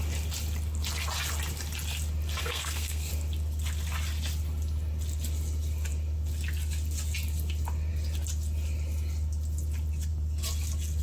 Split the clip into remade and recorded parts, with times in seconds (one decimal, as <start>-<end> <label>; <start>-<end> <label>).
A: 0.0-2.4 recorded; 2.4-3.1 remade; 3.1-11.0 recorded